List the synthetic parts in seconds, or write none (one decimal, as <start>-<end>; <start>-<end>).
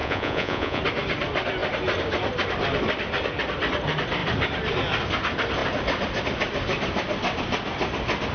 0.0-0.8